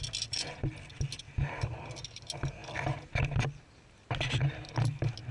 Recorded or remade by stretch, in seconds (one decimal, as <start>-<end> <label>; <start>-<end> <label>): 0.0-5.3 recorded